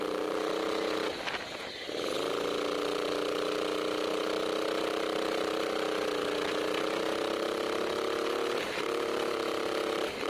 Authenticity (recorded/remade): recorded